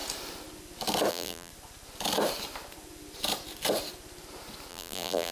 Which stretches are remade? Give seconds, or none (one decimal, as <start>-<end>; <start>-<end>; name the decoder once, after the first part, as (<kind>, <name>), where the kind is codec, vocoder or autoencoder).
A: 1.1-1.5 (vocoder, BigVGAN v2); 4.7-5.3